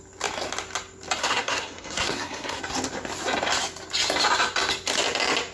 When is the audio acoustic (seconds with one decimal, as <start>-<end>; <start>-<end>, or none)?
0.0-1.2; 2.6-5.5